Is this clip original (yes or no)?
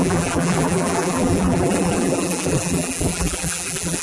no